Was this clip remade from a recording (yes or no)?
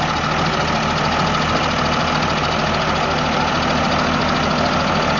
no